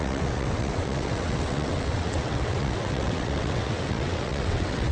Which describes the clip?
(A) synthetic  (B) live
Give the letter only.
A